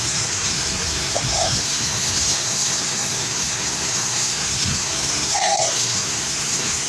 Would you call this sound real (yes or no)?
no